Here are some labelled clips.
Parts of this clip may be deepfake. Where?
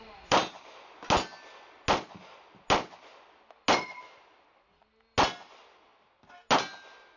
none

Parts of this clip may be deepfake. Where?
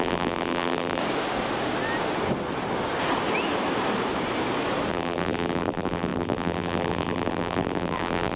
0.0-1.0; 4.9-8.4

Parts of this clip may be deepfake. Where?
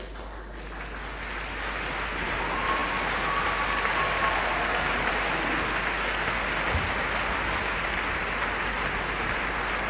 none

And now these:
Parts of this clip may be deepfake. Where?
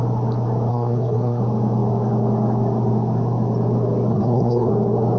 0.7-1.4; 4.1-4.7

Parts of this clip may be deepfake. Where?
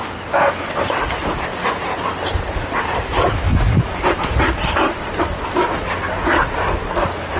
1.5-2.0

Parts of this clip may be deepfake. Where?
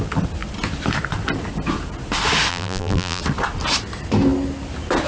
2.5-3.2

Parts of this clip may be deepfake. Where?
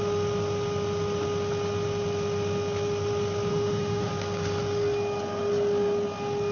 3.5-4.1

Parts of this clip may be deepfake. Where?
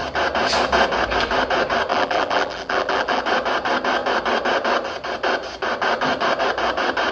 1.9-3.2